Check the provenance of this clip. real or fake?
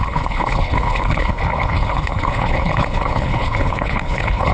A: fake